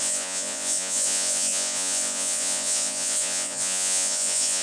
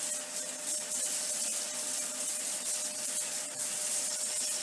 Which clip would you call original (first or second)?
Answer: second